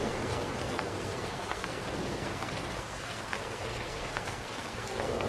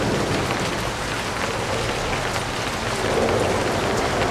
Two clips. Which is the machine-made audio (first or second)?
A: first